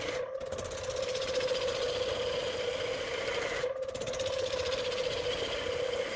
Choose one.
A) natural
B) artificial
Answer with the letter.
A